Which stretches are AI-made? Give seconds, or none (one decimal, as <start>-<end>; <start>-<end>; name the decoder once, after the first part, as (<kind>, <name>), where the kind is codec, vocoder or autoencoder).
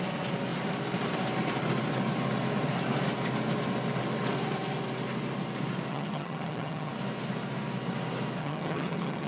5.9-6.9 (vocoder, HiFi-GAN); 8.4-9.3